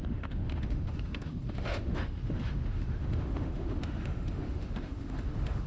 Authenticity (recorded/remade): remade